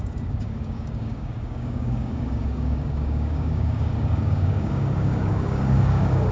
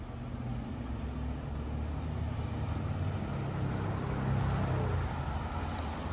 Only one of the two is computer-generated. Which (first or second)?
first